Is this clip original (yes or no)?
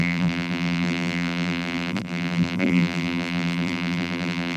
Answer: no